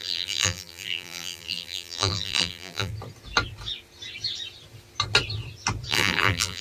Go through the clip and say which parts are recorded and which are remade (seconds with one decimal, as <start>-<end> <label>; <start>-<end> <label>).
0.0-2.9 remade; 2.9-5.9 recorded; 5.9-6.6 remade